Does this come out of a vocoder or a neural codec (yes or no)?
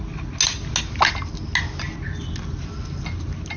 no